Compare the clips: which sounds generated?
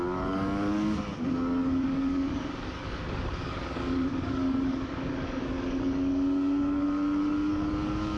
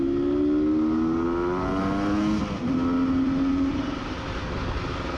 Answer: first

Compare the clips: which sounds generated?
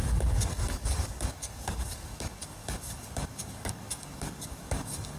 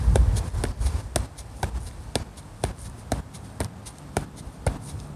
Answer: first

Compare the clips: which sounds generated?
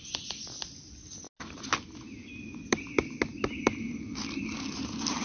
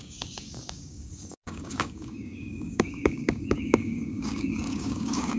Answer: second